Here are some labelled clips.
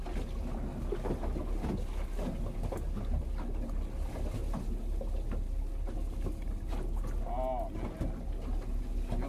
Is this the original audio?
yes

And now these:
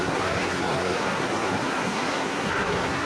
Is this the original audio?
no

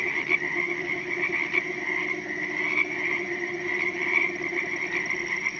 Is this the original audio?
yes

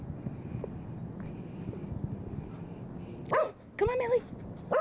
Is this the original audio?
yes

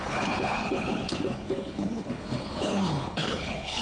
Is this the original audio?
no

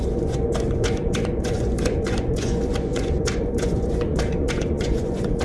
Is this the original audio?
no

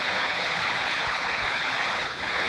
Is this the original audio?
no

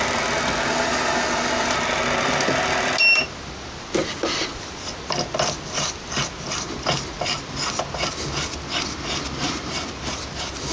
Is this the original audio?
yes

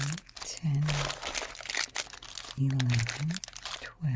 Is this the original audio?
yes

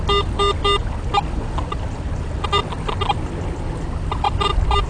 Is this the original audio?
yes